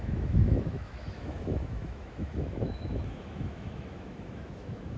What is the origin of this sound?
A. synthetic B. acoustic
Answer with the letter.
A